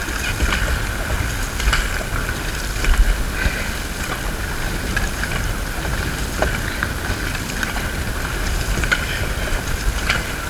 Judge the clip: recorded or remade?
recorded